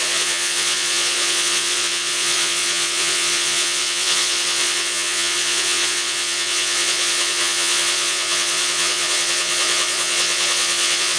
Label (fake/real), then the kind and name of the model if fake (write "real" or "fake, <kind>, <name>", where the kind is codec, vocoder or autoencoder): fake, vocoder, Vocos